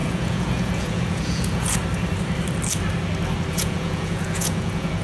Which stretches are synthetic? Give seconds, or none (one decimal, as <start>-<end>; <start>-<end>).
0.0-1.8; 3.5-5.0